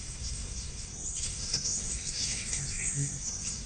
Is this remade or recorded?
remade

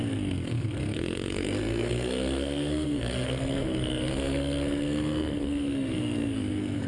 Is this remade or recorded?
remade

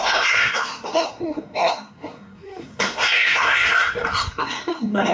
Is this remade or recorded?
remade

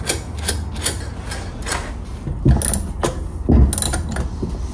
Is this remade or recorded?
recorded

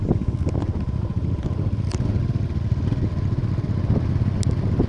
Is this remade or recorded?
recorded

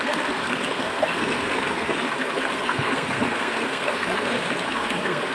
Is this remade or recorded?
remade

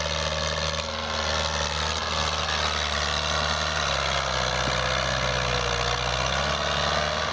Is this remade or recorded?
recorded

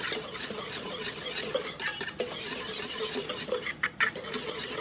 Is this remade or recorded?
recorded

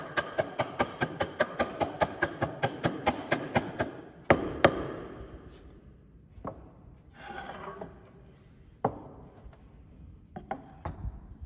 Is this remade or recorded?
recorded